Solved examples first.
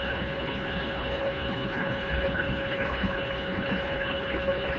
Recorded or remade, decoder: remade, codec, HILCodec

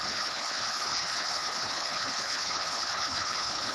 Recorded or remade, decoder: remade, codec, HILCodec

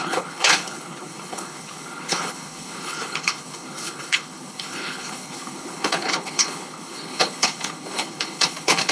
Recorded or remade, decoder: remade, codec, HILCodec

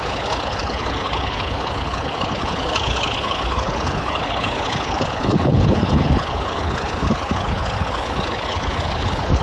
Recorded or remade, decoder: remade, codec, HILCodec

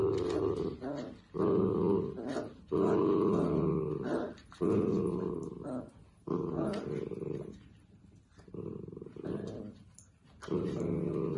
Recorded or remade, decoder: recorded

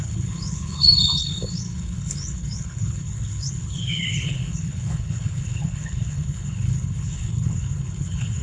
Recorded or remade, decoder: remade, codec, HILCodec